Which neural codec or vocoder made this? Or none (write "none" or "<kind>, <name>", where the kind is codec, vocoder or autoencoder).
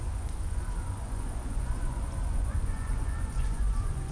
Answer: vocoder, Vocos